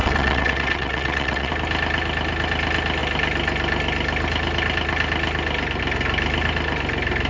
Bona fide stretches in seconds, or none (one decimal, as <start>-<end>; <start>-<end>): 1.5-7.3